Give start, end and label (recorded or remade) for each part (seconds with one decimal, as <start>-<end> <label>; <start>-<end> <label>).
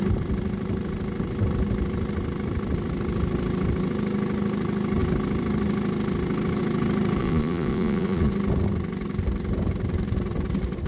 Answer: 0.0-7.2 recorded; 7.2-8.3 remade; 8.3-10.9 recorded